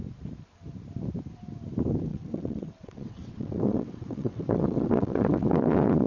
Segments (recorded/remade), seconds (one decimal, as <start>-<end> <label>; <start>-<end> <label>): 0.0-2.1 recorded; 2.1-6.1 remade